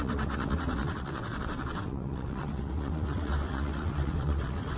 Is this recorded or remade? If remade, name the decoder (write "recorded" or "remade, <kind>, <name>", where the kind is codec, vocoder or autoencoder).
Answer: remade, vocoder, WaveNeXt